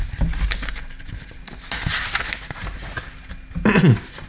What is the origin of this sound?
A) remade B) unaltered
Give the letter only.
B